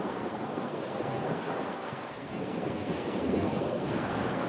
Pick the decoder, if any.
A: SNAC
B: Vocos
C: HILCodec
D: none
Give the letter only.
A